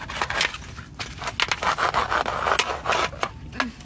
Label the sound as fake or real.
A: real